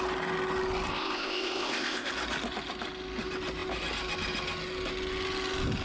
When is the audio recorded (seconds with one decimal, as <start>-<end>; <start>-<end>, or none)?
0.0-0.9; 2.1-5.8